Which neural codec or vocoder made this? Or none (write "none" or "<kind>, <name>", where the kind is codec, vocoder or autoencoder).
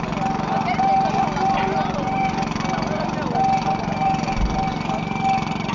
none